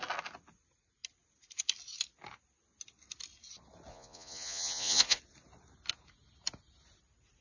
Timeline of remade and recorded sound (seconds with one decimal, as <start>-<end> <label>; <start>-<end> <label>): 0.0-3.9 recorded; 3.9-5.2 remade; 5.2-7.4 recorded